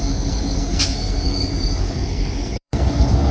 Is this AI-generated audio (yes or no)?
yes